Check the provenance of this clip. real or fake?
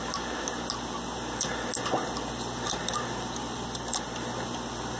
real